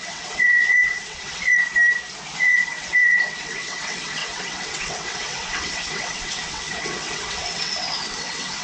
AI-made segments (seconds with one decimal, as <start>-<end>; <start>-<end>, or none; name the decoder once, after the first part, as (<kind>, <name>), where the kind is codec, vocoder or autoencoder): 0.0-1.5 (vocoder, WaveNeXt); 2.4-8.6